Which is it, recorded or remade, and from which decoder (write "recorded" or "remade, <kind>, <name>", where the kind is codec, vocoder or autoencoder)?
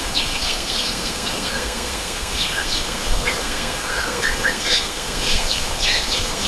remade, codec, SNAC